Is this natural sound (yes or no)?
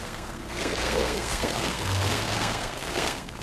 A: no